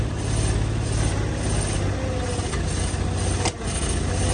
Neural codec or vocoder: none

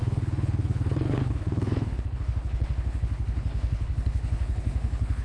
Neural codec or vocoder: codec, HILCodec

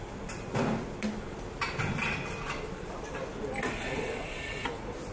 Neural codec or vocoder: none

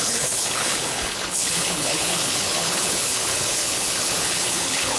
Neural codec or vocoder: codec, HILCodec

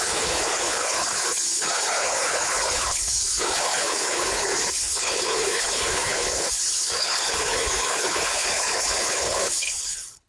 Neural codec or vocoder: codec, HILCodec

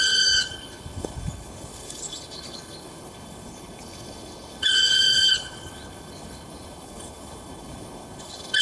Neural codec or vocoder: codec, HILCodec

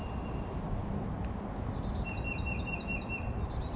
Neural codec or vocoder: none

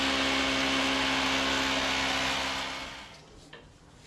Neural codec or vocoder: none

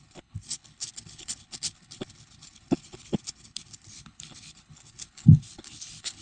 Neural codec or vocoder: codec, HILCodec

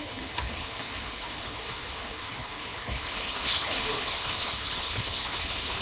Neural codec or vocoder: codec, HILCodec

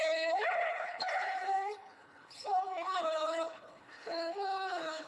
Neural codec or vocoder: codec, HILCodec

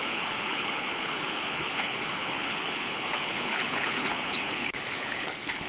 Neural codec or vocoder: codec, HILCodec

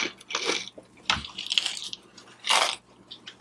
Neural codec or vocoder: none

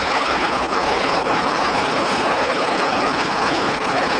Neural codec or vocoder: codec, HILCodec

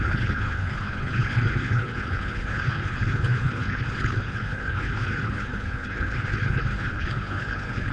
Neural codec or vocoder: codec, HILCodec